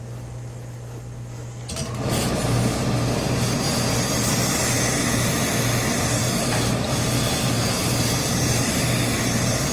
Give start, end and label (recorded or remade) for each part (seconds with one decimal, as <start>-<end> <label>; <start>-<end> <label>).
0.0-6.2 recorded; 6.2-9.7 remade